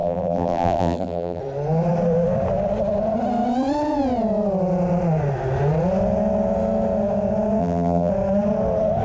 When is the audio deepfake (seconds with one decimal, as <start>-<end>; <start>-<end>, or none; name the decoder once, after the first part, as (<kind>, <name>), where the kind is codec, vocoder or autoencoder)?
0.0-1.4 (vocoder, BigVGAN v2); 7.6-8.1